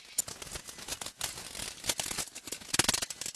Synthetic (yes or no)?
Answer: no